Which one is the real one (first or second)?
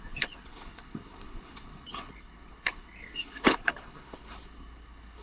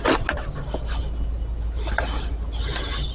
second